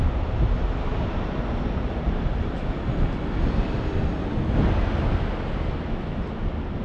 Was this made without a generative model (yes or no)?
yes